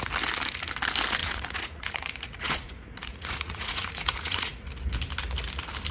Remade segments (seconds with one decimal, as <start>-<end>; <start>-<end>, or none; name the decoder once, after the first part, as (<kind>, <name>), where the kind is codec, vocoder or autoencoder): 1.2-4.7 (vocoder, Vocos)